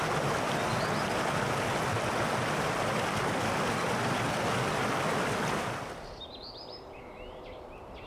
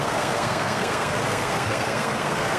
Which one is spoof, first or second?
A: second